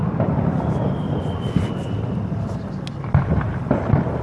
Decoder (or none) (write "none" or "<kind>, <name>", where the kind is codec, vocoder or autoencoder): none